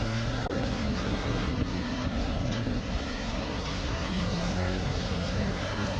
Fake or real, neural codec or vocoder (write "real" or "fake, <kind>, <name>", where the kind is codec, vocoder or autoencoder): fake, codec, SNAC